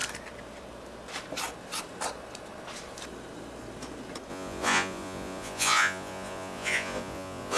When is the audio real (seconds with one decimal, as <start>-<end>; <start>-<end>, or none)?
0.0-4.3